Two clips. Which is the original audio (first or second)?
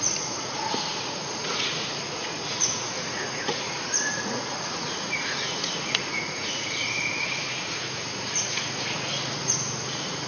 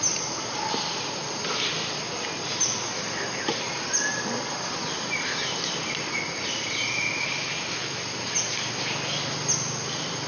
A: second